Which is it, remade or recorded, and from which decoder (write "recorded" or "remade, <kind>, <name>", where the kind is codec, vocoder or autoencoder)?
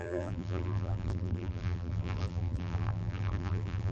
remade, vocoder, BigVGAN v2